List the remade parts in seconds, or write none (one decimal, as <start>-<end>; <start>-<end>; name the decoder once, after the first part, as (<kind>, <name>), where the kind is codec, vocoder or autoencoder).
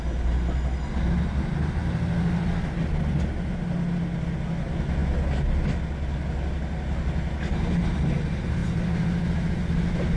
none